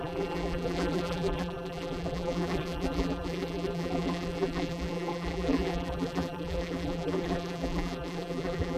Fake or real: fake